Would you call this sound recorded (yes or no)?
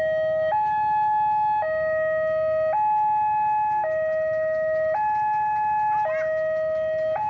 yes